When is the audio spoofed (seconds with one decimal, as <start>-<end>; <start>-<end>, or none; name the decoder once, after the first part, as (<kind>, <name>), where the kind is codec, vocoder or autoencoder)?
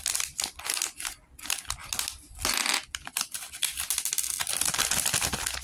none